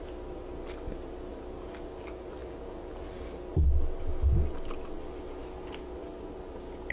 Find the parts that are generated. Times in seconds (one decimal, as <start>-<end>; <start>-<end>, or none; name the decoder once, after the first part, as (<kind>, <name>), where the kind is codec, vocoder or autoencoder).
none